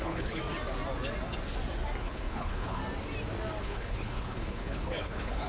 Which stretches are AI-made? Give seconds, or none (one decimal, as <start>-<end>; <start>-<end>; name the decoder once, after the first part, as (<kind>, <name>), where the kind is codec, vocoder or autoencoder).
0.0-0.4 (codec, HILCodec); 2.0-2.8; 3.6-5.5